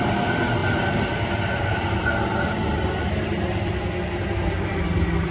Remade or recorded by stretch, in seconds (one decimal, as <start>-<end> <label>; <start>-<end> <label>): 0.0-0.6 recorded; 0.6-3.8 remade; 3.8-5.3 recorded

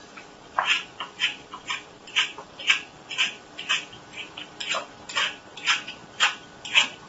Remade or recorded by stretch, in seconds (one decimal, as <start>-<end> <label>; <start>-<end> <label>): 0.0-6.0 remade; 6.0-7.1 recorded

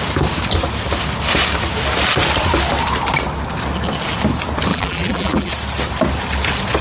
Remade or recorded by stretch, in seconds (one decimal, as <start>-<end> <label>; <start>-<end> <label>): 0.0-4.7 recorded; 4.7-5.5 remade; 5.5-6.8 recorded

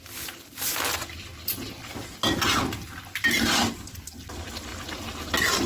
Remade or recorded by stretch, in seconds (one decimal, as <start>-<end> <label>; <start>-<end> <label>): 0.0-5.7 recorded

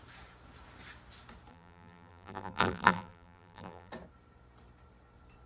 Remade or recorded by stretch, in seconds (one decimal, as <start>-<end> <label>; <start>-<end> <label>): 0.0-1.5 recorded; 1.5-3.9 remade; 3.9-5.5 recorded